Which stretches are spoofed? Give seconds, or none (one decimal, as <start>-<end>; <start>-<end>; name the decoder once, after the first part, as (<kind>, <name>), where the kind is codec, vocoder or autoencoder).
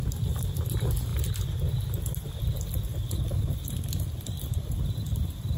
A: none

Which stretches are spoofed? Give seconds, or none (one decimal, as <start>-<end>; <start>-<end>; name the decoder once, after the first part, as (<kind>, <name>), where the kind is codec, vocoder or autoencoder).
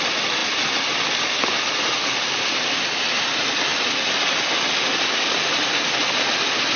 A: none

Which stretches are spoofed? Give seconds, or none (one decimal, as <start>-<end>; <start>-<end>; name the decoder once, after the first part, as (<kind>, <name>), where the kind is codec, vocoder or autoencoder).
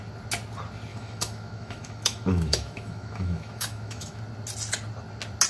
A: 0.9-4.2 (autoencoder, DAC-VAE)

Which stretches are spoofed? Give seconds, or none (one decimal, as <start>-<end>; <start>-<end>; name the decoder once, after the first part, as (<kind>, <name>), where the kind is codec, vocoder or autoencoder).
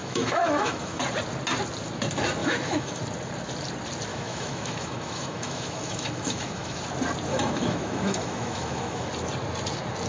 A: 0.0-1.0 (autoencoder, DAC-VAE); 2.4-3.0; 4.1-6.8; 7.3-9.1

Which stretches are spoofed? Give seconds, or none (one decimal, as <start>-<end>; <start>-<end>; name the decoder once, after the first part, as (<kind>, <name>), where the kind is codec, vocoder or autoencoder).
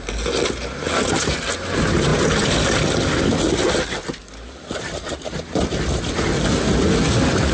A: none